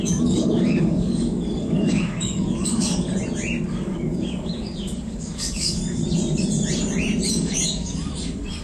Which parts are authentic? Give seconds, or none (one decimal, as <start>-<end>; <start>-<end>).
3.1-3.7; 6.0-7.3